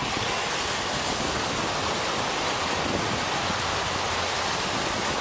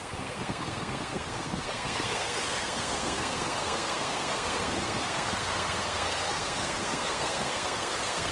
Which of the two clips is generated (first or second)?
second